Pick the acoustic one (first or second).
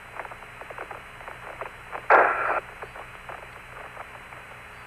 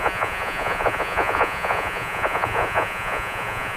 first